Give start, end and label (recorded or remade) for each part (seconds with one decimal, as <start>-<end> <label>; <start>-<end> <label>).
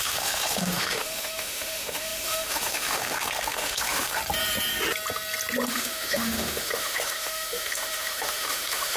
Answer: 0.0-4.2 remade; 4.2-5.7 recorded; 5.7-9.0 remade